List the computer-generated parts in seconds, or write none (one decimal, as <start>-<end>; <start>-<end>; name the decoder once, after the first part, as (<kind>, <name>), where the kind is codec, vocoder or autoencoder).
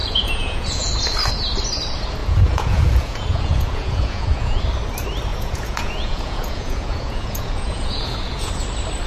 0.0-0.9 (vocoder, Vocos); 2.2-4.6; 5.3-8.5